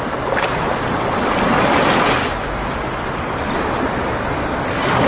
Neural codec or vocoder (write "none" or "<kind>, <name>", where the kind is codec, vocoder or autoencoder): none